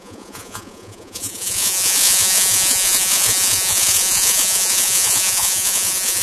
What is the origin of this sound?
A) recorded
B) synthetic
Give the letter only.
B